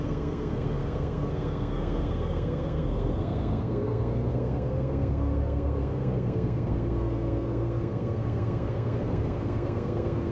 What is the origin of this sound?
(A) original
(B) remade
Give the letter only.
B